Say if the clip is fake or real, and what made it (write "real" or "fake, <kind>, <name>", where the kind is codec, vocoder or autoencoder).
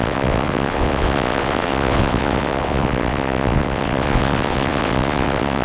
fake, vocoder, WaveNeXt